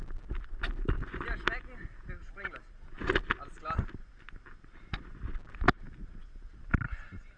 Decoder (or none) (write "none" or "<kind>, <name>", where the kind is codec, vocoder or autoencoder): none